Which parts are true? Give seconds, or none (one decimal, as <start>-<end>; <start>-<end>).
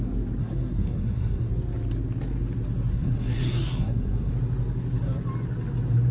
0.0-0.4; 1.5-2.9; 4.3-6.1